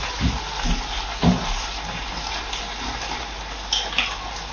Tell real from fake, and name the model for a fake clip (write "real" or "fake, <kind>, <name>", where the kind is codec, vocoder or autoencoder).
real